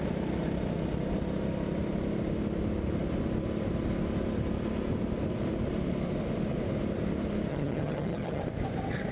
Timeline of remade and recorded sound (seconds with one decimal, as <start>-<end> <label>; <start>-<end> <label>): 0.0-7.5 recorded; 7.5-8.4 remade; 8.4-9.1 recorded